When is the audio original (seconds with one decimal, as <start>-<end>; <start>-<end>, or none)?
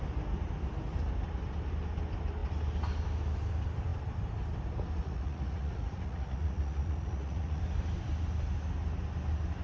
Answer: 0.0-5.0; 7.6-9.6